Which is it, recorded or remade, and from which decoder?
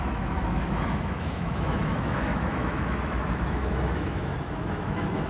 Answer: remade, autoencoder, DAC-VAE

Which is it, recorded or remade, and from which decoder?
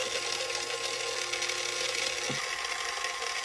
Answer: recorded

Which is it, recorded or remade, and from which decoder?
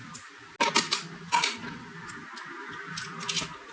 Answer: recorded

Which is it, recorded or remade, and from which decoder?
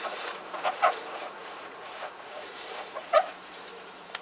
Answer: remade, vocoder, Vocos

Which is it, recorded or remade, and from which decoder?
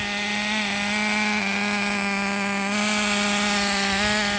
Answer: recorded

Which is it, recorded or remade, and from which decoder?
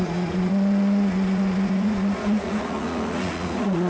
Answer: remade, vocoder, Vocos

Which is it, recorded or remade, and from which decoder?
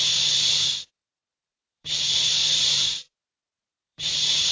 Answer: remade, vocoder, BigVGAN v2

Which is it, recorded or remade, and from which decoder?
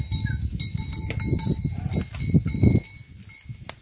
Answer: recorded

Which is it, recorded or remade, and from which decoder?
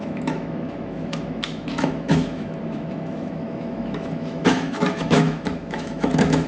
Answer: remade, autoencoder, DAC-VAE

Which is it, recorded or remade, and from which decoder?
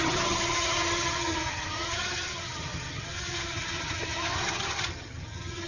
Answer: remade, vocoder, HiFi-GAN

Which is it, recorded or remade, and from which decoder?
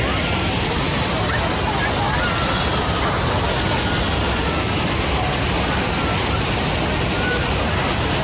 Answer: recorded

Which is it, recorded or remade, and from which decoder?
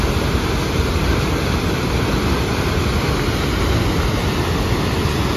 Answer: recorded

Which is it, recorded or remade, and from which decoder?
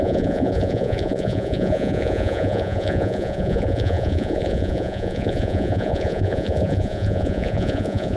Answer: remade, vocoder, Vocos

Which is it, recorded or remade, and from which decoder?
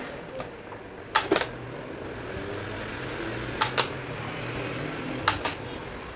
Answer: recorded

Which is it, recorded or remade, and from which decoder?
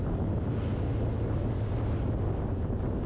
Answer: recorded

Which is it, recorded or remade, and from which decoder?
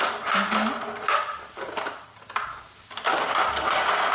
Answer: recorded